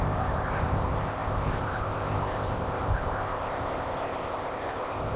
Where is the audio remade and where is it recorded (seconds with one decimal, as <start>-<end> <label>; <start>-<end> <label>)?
0.0-5.2 remade